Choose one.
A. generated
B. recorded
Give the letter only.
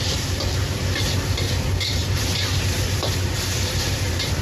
A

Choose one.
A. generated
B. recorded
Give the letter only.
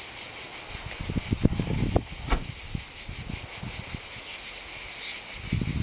B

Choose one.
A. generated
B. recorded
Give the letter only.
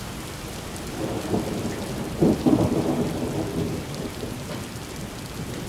A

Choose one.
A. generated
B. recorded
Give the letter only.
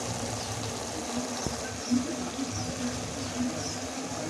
B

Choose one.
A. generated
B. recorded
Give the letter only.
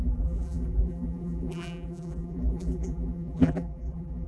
A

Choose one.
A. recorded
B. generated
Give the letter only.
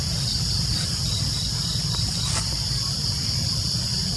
B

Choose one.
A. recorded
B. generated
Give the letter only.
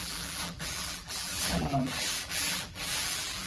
B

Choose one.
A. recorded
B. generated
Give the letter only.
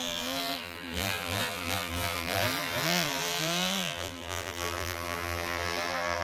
B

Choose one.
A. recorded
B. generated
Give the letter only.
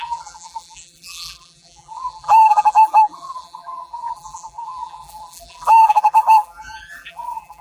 B